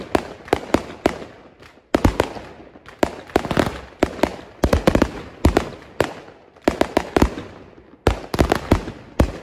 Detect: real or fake real